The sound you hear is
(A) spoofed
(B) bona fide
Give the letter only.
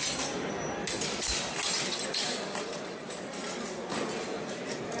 B